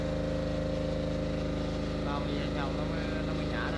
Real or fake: real